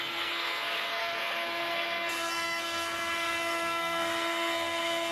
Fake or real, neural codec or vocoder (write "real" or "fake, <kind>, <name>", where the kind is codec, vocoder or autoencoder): fake, codec, SNAC